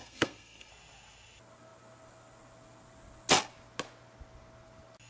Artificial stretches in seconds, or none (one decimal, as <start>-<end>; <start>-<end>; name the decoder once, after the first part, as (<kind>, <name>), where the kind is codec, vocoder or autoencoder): 0.0-0.7 (codec, SNAC)